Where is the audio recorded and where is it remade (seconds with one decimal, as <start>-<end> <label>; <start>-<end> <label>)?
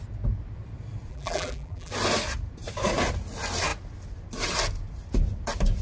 0.0-1.1 recorded; 1.1-1.9 remade; 1.9-5.8 recorded